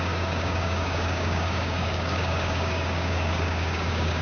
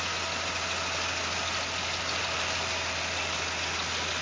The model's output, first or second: first